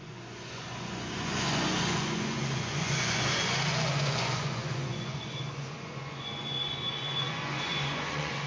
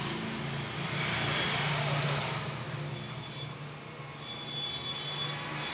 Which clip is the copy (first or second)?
first